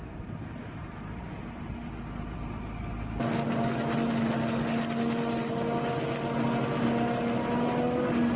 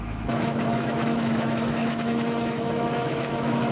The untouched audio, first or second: first